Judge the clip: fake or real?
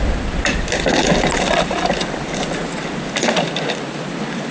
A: real